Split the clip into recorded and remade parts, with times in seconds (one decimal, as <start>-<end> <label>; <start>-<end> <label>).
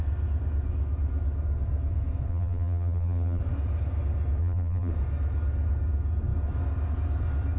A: 0.0-2.3 recorded; 2.3-3.4 remade; 3.4-4.4 recorded; 4.4-4.9 remade; 4.9-7.6 recorded